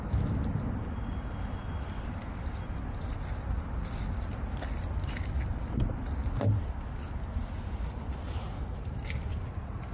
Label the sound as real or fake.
real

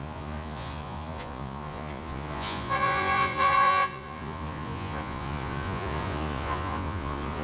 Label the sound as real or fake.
fake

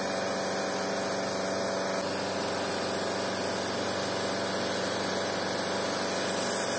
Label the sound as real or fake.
real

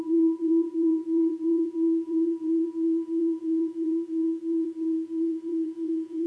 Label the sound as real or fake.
fake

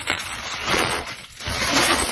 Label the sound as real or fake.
fake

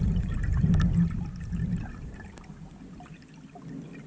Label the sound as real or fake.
real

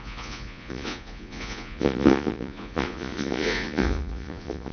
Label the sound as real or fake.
fake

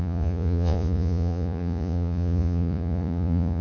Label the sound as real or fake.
fake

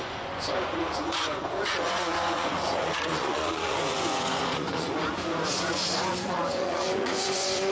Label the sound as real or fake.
fake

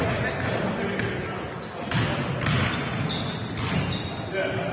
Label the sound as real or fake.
real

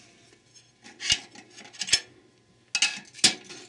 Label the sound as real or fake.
real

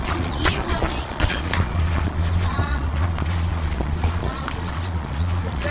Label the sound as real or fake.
fake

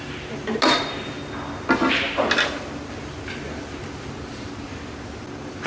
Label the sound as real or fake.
real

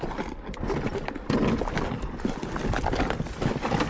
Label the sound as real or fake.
real